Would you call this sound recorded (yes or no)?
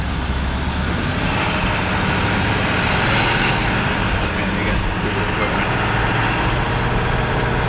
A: yes